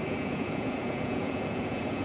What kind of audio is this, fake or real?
fake